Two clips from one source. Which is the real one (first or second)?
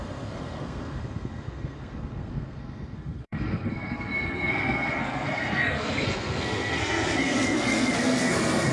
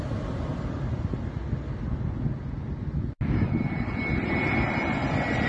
second